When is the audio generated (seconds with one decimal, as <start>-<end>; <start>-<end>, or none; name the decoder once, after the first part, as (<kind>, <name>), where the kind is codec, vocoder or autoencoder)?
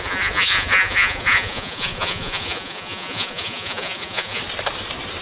0.0-4.4 (vocoder, Vocos)